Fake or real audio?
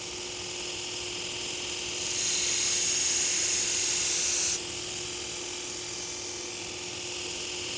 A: real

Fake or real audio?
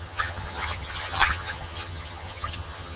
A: fake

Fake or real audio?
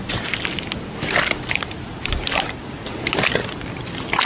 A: real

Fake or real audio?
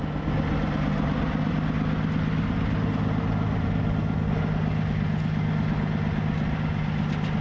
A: real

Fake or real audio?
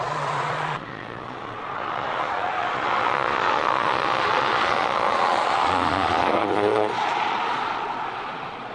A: fake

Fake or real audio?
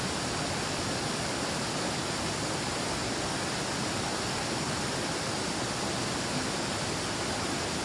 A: real